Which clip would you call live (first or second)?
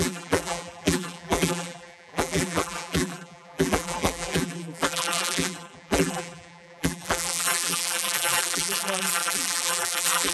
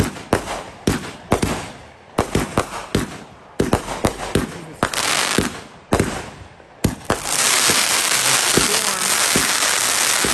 second